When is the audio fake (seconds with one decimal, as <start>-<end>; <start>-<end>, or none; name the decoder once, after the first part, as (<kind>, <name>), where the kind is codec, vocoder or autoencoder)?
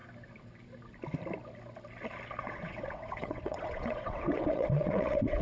2.4-5.4 (vocoder, WaveNeXt)